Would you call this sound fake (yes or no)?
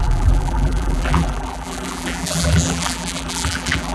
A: yes